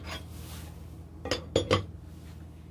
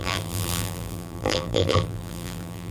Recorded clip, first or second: first